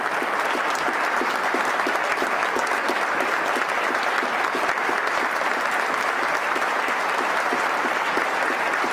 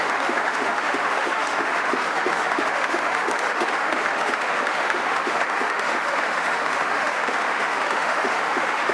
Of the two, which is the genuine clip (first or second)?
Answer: first